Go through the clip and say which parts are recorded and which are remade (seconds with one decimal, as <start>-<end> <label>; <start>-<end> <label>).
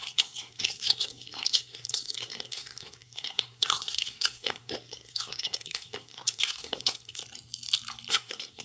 0.0-7.2 remade; 7.2-8.1 recorded; 8.1-8.6 remade